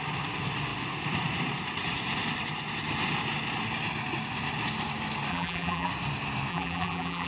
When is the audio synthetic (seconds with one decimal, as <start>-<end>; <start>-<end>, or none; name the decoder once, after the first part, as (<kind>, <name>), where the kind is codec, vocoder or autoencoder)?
5.3-5.9 (vocoder, BigVGAN v2); 6.5-7.3